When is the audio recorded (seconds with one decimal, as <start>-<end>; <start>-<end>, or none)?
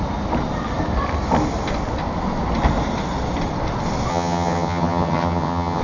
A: 0.0-4.1